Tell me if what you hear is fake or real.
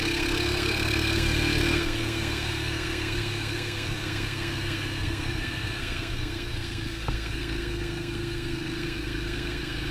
fake